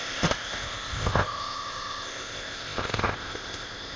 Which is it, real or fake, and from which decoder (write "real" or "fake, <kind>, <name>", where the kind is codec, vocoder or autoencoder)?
fake, codec, ZipCodec